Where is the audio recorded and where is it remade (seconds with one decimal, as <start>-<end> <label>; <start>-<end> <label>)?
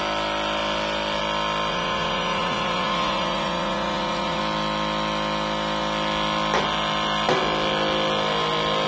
0.0-1.7 recorded; 1.7-4.4 remade; 4.4-8.9 recorded